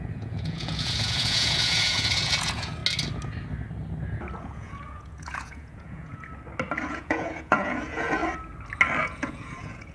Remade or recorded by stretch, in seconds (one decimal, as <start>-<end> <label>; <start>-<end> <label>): 0.0-2.8 remade; 2.8-4.3 recorded; 4.3-6.3 remade; 6.3-6.8 recorded; 6.8-8.2 remade; 8.2-9.0 recorded; 9.0-9.9 remade